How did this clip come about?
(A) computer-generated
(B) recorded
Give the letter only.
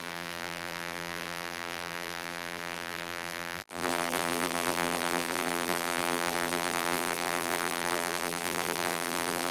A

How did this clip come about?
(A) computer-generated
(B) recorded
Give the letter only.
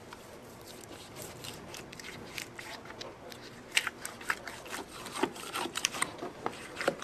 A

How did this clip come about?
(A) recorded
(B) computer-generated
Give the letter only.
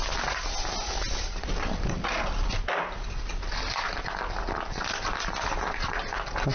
A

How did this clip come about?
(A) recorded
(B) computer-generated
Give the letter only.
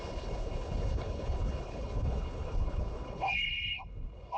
B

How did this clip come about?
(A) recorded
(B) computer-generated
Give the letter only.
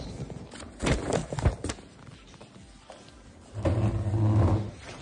A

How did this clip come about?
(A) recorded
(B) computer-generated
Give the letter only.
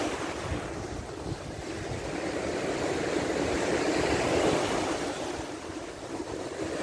A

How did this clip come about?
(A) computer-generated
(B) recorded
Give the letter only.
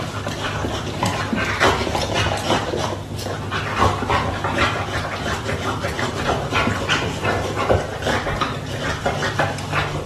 B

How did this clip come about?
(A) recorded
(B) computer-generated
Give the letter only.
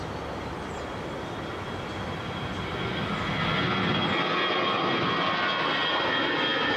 A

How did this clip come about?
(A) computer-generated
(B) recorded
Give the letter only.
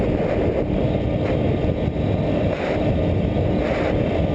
B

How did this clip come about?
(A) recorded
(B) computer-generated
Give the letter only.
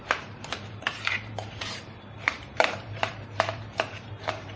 B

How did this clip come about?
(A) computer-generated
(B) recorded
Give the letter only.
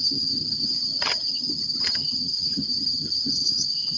A